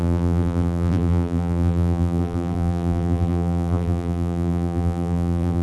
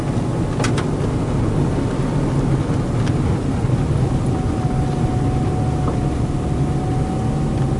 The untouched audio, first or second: second